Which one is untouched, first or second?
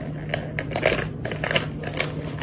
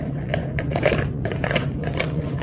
first